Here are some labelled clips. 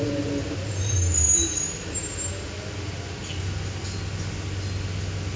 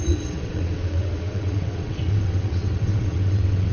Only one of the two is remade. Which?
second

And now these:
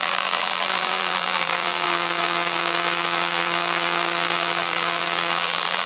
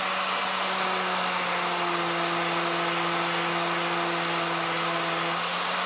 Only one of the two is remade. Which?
first